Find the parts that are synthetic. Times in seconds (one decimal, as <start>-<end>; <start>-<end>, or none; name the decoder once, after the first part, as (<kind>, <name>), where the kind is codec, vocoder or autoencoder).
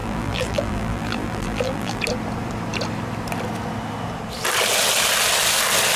0.0-2.0 (vocoder, BigVGAN v2)